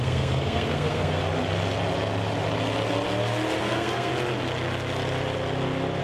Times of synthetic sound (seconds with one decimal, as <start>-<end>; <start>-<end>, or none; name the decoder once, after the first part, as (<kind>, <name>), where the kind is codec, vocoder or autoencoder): 0.0-1.2 (codec, SNAC); 3.6-4.1

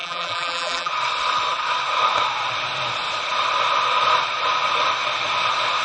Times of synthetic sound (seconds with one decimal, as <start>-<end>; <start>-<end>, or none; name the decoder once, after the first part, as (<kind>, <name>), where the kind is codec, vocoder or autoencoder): 0.0-0.9 (vocoder, BigVGAN v2)

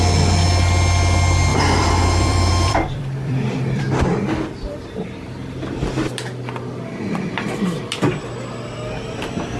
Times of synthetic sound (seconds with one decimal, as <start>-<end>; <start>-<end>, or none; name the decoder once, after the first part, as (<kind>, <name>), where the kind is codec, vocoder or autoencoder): 1.5-3.8 (vocoder, BigVGAN v2)

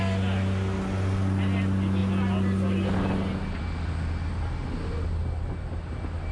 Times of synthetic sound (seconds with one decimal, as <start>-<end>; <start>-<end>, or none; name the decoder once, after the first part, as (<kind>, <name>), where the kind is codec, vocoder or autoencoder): none

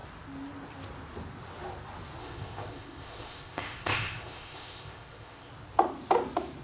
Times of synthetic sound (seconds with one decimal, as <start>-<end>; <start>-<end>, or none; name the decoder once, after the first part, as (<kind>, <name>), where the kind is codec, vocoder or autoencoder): 2.2-5.5 (codec, ZipCodec)

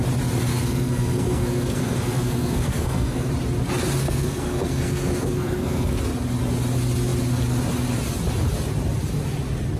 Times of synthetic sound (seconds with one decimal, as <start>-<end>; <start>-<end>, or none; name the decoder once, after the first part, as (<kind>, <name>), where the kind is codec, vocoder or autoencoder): 0.5-3.3 (codec, SNAC); 4.0-6.0

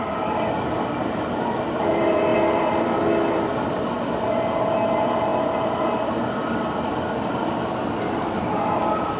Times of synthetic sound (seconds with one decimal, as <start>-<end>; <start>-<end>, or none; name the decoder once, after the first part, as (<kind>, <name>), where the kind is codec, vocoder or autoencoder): none

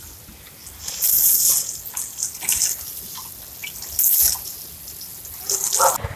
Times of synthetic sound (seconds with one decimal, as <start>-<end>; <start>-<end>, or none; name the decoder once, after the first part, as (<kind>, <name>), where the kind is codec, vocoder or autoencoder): none